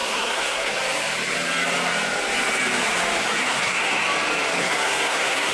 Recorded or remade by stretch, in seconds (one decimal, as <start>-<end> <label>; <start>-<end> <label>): 0.0-0.7 remade; 0.7-3.4 recorded; 3.4-4.0 remade; 4.0-4.6 recorded; 4.6-5.5 remade